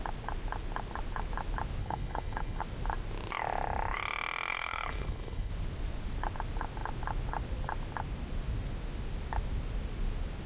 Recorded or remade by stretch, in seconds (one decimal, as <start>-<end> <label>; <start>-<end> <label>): 0.0-1.8 recorded; 1.8-2.6 remade; 2.6-4.5 recorded; 4.5-5.5 remade; 5.5-10.5 recorded